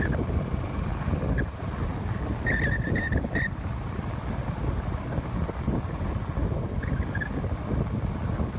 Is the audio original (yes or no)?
yes